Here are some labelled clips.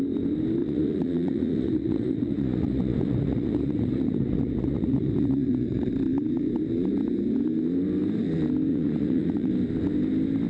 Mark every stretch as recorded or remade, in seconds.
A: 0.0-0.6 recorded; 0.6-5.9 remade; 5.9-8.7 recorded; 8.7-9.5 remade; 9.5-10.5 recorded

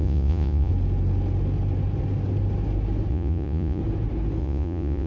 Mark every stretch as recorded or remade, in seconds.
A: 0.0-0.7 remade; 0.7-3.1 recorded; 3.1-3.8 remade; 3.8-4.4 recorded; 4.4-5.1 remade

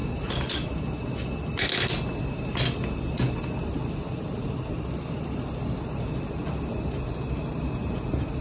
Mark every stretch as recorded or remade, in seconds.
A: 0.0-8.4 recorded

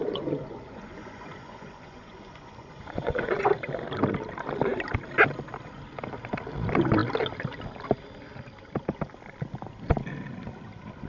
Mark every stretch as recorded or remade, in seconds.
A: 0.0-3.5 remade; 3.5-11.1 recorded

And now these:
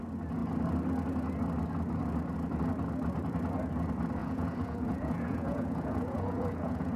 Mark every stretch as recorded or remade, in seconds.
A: 0.0-4.2 recorded; 4.2-7.0 remade